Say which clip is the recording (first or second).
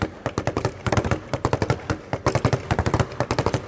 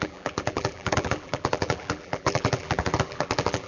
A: first